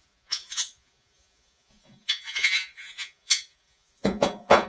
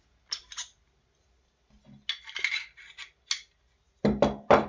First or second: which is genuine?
second